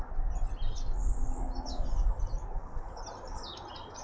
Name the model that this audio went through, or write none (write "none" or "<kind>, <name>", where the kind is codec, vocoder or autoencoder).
none